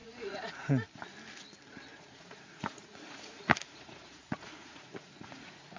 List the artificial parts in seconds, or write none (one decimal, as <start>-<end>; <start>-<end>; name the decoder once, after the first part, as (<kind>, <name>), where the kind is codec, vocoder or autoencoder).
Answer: 0.0-0.6 (vocoder, Vocos); 1.9-5.8